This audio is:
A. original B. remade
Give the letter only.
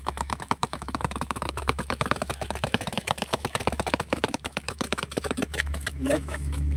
B